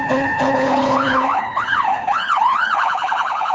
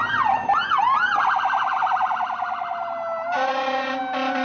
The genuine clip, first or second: second